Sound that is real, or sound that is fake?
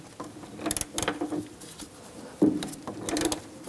real